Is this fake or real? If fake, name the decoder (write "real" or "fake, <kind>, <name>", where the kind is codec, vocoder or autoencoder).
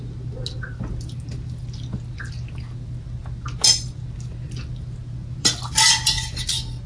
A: real